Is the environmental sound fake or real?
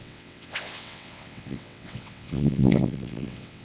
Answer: fake